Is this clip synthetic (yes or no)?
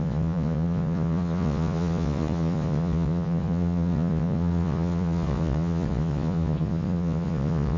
yes